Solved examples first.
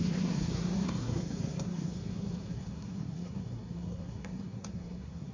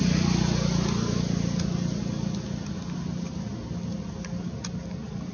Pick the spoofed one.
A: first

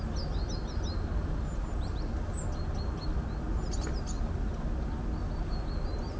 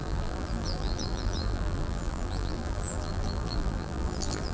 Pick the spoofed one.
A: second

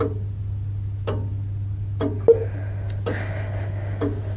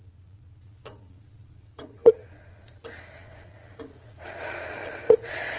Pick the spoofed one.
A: second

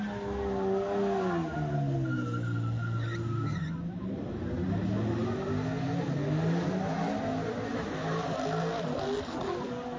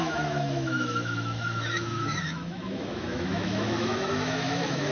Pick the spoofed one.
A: second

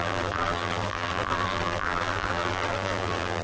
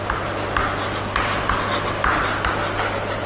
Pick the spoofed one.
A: first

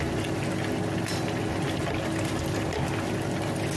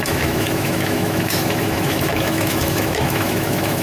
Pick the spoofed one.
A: second